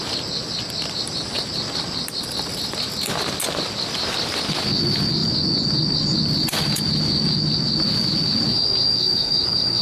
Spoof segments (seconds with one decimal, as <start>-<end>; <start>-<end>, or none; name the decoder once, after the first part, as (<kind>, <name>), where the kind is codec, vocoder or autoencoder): 8.9-9.8 (codec, DAC)